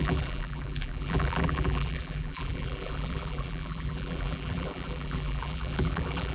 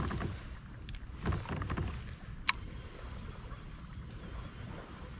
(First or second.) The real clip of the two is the second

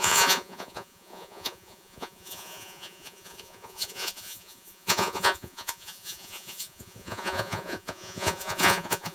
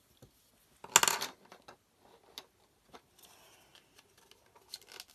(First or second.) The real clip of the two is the second